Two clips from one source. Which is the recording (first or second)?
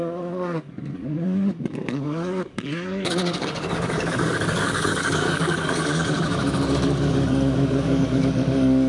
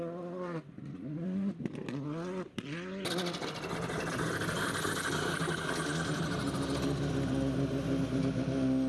second